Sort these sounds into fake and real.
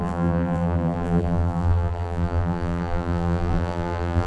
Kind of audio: fake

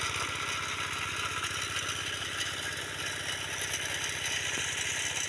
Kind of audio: real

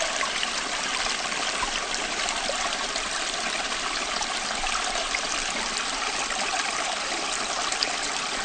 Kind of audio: fake